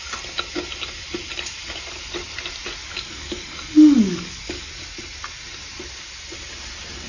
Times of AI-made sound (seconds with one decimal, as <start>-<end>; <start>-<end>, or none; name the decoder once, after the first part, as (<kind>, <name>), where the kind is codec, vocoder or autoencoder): 2.8-4.7 (codec, DAC)